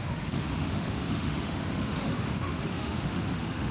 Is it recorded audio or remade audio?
remade